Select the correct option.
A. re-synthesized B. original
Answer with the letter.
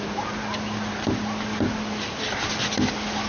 B